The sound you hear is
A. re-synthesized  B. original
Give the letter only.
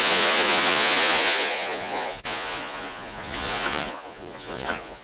A